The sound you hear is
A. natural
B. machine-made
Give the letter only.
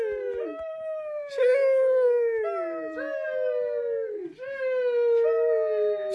A